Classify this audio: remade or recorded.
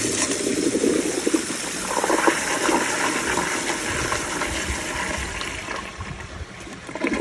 recorded